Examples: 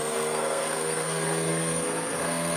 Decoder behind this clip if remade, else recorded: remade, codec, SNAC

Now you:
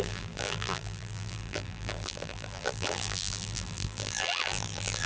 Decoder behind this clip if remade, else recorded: remade, vocoder, BigVGAN v2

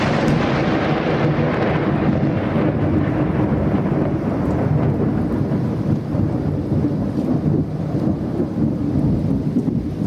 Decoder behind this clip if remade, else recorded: recorded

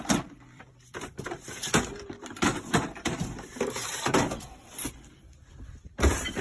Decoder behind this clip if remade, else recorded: remade, vocoder, BigVGAN v2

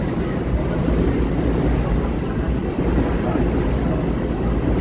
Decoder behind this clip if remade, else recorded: recorded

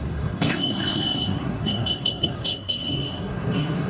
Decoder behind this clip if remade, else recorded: remade, codec, SNAC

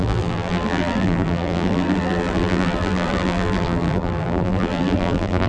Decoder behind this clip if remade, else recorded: remade, vocoder, BigVGAN v2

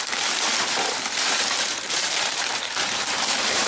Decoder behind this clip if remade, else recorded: remade, vocoder, BigVGAN v2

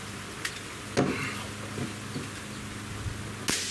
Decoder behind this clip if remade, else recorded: recorded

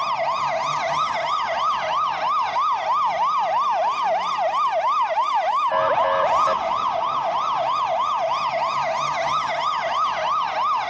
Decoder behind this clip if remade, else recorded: recorded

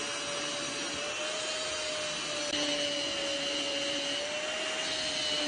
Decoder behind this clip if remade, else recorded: recorded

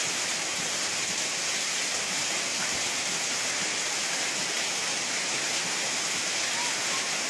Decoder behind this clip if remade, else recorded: recorded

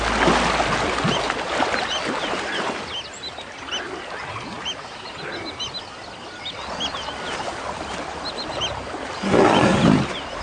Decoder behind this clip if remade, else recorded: recorded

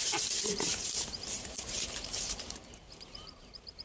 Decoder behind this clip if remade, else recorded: remade, vocoder, BigVGAN v2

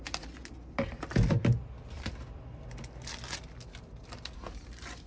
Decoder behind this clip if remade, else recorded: recorded